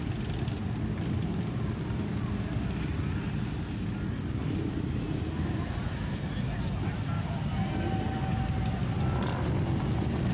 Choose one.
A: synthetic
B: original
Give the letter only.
B